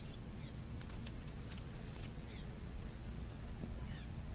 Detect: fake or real fake